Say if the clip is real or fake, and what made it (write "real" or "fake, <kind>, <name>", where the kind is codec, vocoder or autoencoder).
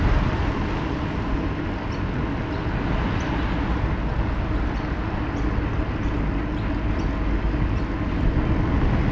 real